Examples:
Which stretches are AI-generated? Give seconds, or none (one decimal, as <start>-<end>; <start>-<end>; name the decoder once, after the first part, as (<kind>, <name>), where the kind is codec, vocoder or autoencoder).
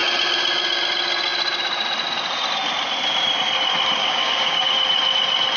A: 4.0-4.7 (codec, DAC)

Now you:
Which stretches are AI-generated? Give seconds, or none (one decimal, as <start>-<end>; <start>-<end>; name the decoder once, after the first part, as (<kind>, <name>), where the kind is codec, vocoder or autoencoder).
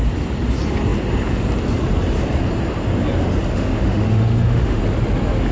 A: 3.5-4.8 (autoencoder, DAC-VAE)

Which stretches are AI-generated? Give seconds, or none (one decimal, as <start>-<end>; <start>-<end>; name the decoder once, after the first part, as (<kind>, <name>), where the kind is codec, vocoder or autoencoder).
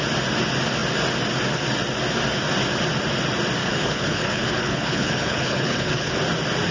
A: 3.6-6.1 (codec, HILCodec)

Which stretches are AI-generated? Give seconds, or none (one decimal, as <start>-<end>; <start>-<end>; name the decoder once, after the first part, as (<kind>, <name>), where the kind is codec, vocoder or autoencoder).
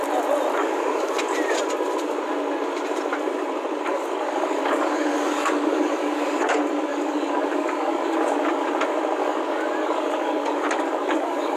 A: 0.5-1.2 (codec, DAC); 3.9-6.4; 6.9-8.7; 9.2-11.6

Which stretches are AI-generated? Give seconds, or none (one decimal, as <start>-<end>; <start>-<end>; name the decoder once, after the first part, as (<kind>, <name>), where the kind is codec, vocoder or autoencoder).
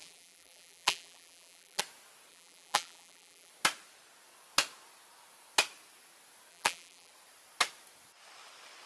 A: 0.0-1.8 (vocoder, BigVGAN v2); 2.3-3.5; 6.5-7.1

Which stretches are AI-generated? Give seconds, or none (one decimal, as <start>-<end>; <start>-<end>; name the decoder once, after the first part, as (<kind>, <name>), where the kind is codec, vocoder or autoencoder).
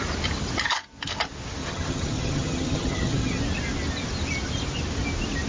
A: 1.6-3.4 (vocoder, HiFi-GAN)